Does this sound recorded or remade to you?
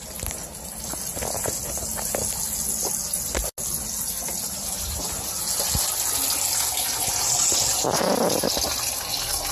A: recorded